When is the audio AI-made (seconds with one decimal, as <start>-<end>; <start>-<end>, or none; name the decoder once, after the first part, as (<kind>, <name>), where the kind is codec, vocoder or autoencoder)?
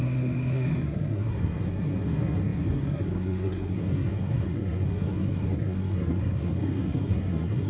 0.0-7.7 (codec, SNAC)